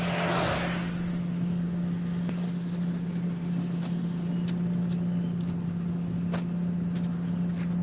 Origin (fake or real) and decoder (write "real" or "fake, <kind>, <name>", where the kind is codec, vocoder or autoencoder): real